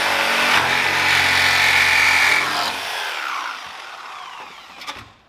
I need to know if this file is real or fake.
real